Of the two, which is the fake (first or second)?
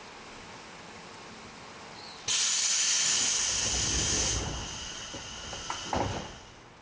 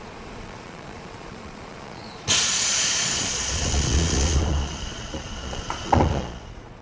second